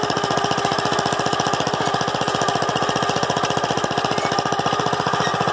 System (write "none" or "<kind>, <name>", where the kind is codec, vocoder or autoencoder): none